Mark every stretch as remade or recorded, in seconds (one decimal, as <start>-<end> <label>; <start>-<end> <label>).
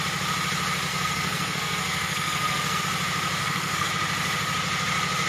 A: 0.0-0.9 recorded; 0.9-2.8 remade; 2.8-3.4 recorded; 3.4-3.9 remade; 3.9-5.3 recorded